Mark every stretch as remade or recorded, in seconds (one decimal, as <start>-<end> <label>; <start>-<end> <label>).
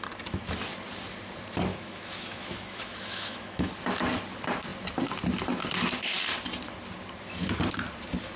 0.0-1.7 recorded; 1.7-3.7 remade; 3.7-8.4 recorded